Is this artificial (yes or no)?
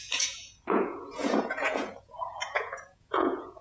yes